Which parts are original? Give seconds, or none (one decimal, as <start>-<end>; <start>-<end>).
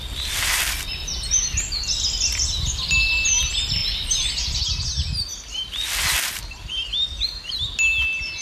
0.0-8.4